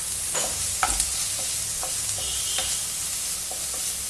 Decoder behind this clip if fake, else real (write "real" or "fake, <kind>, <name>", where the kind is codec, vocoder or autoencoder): real